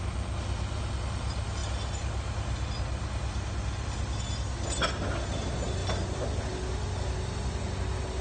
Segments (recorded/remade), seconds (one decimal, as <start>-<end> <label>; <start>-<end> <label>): 0.0-8.2 recorded